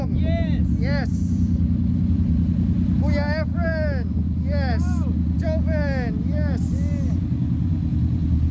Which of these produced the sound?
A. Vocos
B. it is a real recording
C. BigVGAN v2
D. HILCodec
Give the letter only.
B